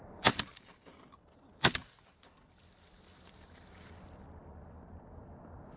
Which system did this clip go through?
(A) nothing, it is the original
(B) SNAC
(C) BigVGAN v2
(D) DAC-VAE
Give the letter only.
C